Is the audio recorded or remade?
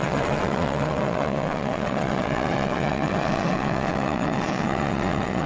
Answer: remade